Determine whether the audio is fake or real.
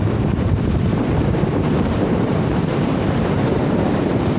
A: fake